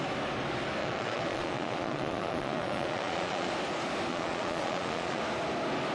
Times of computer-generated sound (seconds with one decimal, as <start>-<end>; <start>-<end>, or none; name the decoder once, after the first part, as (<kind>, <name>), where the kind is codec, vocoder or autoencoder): 0.8-3.5 (vocoder, Vocos); 4.1-5.2